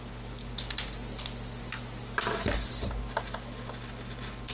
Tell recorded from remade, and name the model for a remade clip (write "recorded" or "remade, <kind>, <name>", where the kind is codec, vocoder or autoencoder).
recorded